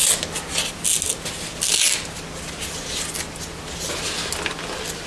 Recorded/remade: recorded